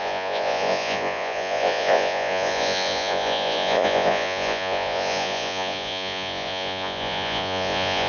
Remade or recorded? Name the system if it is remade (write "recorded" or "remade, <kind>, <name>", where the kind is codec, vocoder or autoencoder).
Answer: remade, vocoder, Vocos